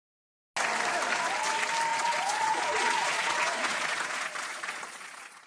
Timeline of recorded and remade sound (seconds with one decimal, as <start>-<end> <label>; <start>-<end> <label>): 0.0-1.9 recorded; 1.9-5.5 remade

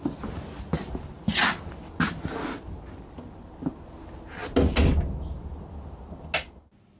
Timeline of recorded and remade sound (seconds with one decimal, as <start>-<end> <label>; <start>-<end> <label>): 0.0-7.0 recorded

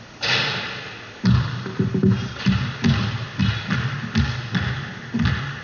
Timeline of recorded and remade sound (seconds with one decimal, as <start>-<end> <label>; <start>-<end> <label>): 0.0-5.6 recorded